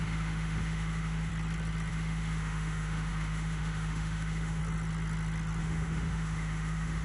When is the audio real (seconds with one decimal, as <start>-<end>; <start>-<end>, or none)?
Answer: 1.3-1.9; 4.6-5.6

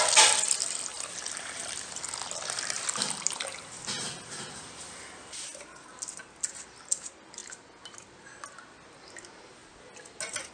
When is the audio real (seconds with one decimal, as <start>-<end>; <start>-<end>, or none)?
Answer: 0.0-10.5

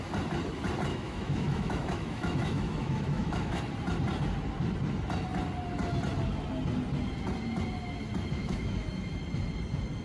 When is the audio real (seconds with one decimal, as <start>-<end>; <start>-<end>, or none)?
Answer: 0.0-0.9; 3.6-8.4; 9.2-10.0

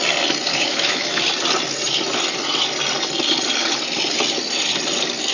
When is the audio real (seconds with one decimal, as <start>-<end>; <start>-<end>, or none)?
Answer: 0.0-0.5; 1.2-5.3

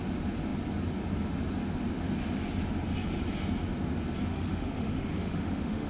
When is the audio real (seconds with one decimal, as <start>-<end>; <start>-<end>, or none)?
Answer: 0.0-4.3